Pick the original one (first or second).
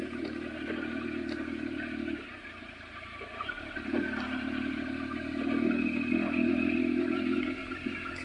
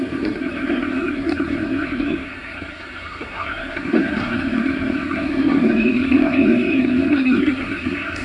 first